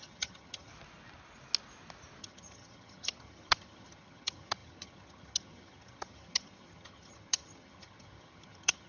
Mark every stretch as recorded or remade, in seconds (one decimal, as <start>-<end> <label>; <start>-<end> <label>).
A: 0.0-0.7 remade; 0.7-2.2 recorded; 2.2-8.9 remade